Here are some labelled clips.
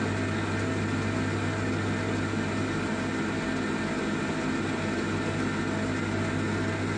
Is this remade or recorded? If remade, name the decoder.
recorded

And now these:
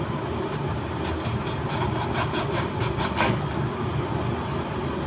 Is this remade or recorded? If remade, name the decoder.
recorded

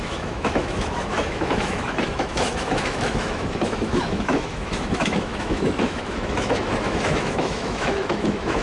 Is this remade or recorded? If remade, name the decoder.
remade, autoencoder, DAC-VAE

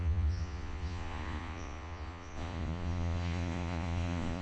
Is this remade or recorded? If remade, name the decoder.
remade, vocoder, Vocos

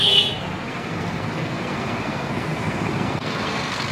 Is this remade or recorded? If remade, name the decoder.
remade, codec, SNAC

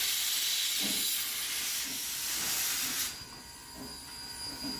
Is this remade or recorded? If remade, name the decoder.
recorded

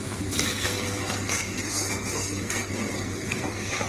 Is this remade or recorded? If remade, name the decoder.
remade, codec, SNAC